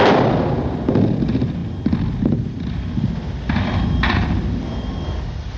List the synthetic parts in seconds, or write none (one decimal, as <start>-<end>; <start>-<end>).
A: none